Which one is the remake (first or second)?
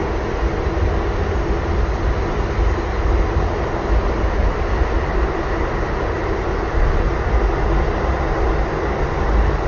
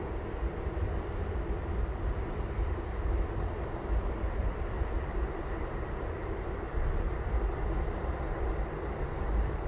second